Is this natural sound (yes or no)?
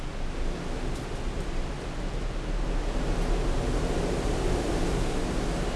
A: yes